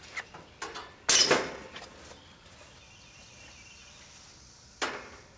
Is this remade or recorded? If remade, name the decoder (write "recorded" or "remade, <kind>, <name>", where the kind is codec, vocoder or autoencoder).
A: recorded